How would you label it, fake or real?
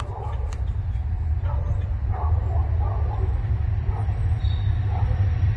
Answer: real